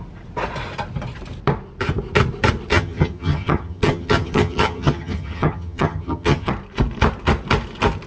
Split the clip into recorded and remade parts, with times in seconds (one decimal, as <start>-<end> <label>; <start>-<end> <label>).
0.0-2.7 recorded; 2.7-6.5 remade; 6.5-8.1 recorded